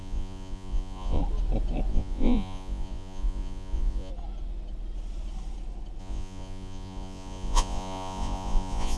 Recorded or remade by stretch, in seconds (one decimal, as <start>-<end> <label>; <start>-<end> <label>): 0.0-1.2 remade; 1.2-1.9 recorded; 1.9-4.1 remade; 4.1-6.0 recorded; 6.0-9.0 remade